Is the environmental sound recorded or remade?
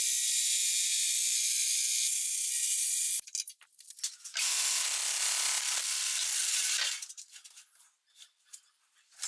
recorded